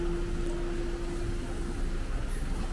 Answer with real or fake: real